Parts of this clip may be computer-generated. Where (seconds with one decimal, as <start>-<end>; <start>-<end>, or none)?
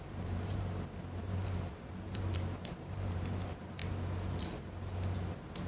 0.0-3.8